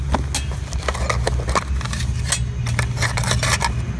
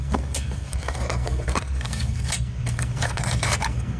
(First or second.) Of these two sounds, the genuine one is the first